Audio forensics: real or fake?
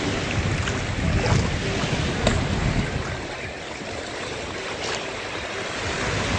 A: real